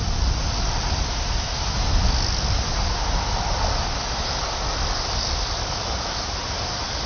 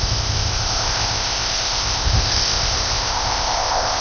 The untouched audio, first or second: first